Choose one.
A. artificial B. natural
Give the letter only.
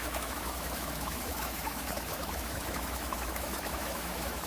A